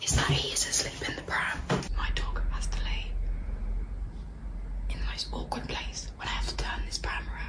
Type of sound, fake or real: real